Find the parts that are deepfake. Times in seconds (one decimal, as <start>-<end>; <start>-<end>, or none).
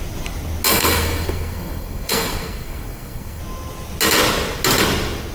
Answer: 0.7-3.4